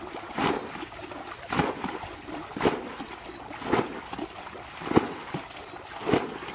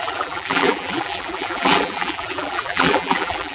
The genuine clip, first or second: first